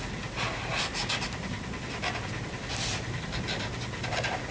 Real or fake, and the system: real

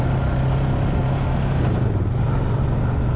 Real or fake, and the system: real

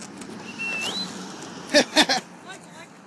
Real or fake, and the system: real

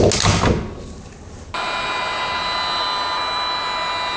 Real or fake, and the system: real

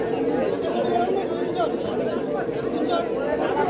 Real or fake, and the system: real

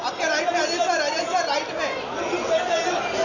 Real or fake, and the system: real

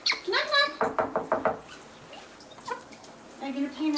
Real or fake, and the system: real